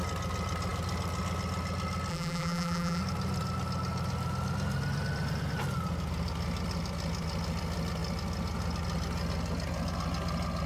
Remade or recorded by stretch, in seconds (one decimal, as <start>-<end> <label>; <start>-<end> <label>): 0.0-2.1 recorded; 2.1-3.0 remade; 3.0-10.7 recorded